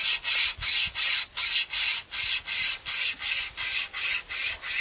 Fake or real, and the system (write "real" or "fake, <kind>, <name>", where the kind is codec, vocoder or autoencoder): real